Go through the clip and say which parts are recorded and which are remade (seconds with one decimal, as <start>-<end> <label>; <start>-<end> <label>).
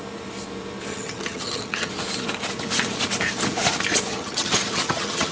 0.0-0.9 recorded; 0.9-1.9 remade; 1.9-4.1 recorded; 4.1-5.3 remade